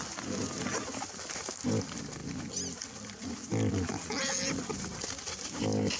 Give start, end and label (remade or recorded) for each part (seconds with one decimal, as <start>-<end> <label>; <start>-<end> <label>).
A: 0.0-6.0 recorded